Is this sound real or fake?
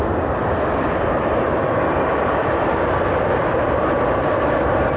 real